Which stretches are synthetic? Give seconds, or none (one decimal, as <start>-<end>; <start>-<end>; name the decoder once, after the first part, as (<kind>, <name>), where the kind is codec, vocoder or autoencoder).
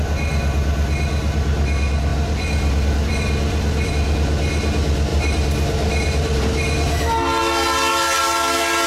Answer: 2.1-3.9 (vocoder, BigVGAN v2); 5.1-6.4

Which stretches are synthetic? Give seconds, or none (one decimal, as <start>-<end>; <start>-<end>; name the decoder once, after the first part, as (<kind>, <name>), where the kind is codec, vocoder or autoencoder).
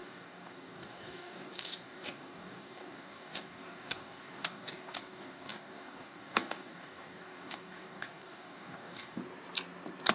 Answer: 0.0-9.2 (codec, DAC)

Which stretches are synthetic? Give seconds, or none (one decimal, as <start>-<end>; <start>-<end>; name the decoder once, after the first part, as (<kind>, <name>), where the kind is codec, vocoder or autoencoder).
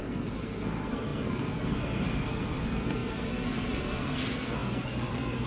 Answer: 0.0-5.5 (codec, SNAC)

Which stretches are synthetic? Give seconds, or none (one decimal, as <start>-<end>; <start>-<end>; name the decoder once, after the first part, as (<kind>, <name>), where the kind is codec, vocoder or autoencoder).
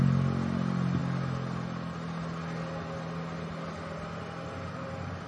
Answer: none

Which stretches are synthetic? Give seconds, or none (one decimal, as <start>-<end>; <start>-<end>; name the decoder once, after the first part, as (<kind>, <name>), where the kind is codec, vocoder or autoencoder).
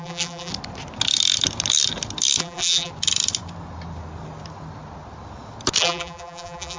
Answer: 0.0-0.5 (vocoder, BigVGAN v2); 2.4-2.9; 5.8-6.8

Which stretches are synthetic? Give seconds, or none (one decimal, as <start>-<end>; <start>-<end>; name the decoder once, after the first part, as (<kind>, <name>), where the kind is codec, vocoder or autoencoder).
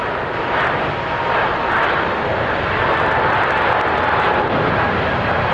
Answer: none